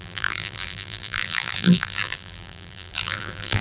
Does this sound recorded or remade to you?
remade